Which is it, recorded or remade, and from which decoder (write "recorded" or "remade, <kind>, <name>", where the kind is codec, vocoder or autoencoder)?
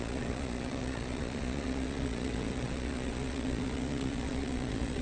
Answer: remade, vocoder, Vocos